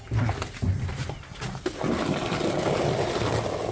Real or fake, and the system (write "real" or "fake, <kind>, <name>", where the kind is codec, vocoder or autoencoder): real